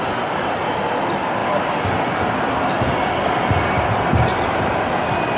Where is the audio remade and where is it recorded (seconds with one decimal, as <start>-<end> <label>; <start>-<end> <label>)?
0.0-5.4 recorded